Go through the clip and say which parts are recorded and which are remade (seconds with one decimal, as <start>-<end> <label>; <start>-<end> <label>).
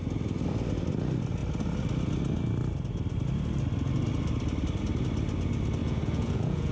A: 0.0-5.8 recorded; 5.8-6.7 remade